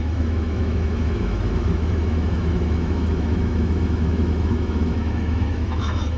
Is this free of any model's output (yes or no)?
no